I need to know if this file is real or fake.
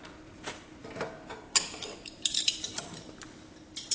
real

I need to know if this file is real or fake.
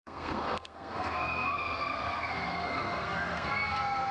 fake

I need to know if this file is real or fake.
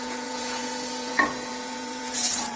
fake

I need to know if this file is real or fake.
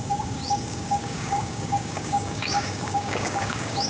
fake